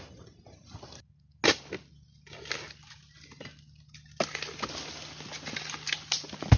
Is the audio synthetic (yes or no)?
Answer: no